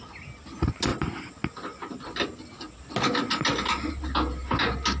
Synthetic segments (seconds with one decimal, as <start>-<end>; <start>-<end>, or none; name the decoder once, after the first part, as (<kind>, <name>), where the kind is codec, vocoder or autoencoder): none